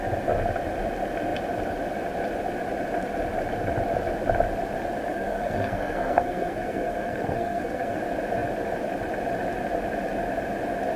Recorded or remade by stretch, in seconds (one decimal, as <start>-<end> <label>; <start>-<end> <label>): 0.0-5.1 recorded; 5.1-8.0 remade; 8.0-11.0 recorded